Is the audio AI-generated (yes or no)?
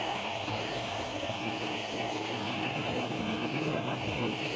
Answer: yes